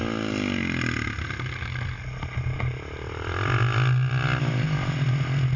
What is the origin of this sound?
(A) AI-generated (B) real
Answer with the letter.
B